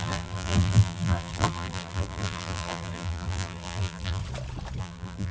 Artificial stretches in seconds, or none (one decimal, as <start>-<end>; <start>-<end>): 0.0-4.2; 4.8-5.3